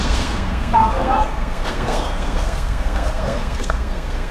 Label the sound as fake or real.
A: fake